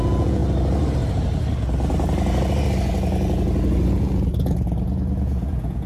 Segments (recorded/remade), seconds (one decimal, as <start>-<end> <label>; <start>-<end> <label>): 0.0-0.4 remade; 0.4-3.9 recorded; 3.9-5.9 remade